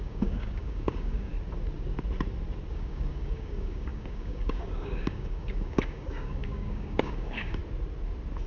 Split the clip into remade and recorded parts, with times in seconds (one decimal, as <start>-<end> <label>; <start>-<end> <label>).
0.0-1.3 remade; 1.3-2.7 recorded; 2.7-7.6 remade; 7.6-8.5 recorded